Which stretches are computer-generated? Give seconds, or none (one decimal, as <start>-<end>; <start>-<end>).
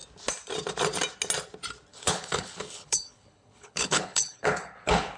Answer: 1.9-5.2